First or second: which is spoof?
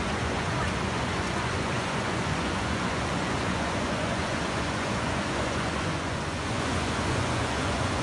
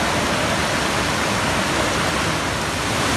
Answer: first